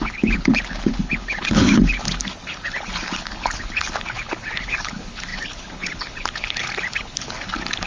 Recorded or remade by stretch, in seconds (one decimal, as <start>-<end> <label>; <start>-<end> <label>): 0.0-7.9 remade

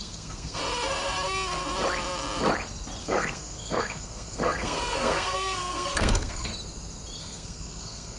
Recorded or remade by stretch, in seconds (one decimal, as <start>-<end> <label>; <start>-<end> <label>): 0.0-0.6 remade; 0.6-3.0 recorded; 3.0-6.5 remade; 6.5-7.2 recorded; 7.2-8.2 remade

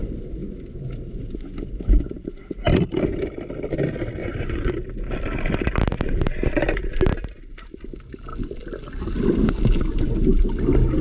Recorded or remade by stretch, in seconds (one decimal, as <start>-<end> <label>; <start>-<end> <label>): 0.0-4.2 recorded; 4.2-4.7 remade; 4.7-11.0 recorded

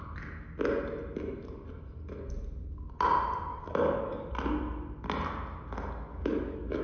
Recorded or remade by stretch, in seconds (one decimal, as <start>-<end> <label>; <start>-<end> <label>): 0.0-3.5 recorded; 3.5-4.3 remade; 4.3-6.1 recorded; 6.1-6.8 remade

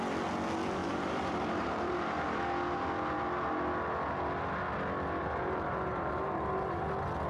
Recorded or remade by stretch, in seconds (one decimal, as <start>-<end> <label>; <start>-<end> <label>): 0.0-0.8 recorded; 0.8-2.4 remade; 2.4-5.2 recorded; 5.2-6.8 remade; 6.8-7.3 recorded